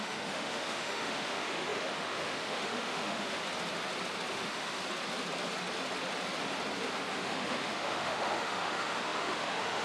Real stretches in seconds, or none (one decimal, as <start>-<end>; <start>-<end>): 3.4-4.3; 4.8-7.2